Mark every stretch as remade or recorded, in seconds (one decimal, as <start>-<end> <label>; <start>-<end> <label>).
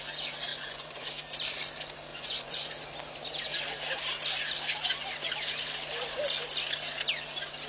0.0-0.5 recorded; 0.5-1.1 remade; 1.1-2.1 recorded; 2.1-2.7 remade; 2.7-7.7 recorded